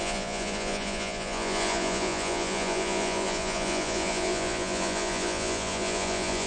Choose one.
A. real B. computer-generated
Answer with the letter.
B